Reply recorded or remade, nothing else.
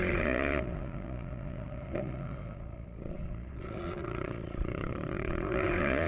remade